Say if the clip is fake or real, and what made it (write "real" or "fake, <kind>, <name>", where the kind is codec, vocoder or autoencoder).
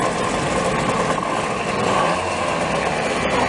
real